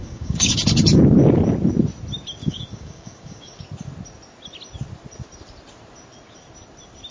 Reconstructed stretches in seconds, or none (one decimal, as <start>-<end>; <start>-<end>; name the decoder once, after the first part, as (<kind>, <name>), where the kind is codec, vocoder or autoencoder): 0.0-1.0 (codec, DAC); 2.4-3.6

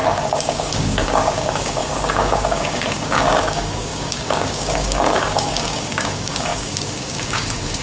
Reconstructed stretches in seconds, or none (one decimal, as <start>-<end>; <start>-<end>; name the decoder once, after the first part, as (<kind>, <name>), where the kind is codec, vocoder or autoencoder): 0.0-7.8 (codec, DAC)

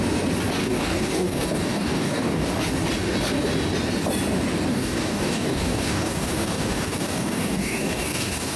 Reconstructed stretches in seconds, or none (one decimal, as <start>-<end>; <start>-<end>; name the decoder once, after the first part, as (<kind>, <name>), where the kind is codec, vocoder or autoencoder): 0.6-2.5 (codec, DAC); 4.7-8.6

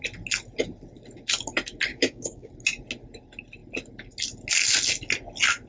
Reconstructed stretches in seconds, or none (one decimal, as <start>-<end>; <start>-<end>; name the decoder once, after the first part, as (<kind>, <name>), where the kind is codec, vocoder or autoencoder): 1.9-2.5 (codec, DAC)

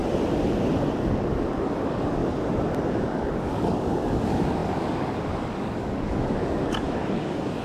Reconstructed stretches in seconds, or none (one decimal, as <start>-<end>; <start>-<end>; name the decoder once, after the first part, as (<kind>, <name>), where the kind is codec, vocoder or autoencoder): 1.1-2.2 (codec, DAC); 2.9-7.6